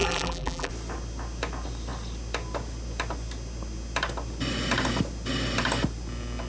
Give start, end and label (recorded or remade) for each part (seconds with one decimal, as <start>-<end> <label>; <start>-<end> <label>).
0.0-0.7 remade; 0.7-6.5 recorded